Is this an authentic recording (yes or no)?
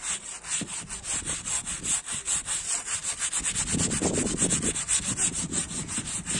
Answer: yes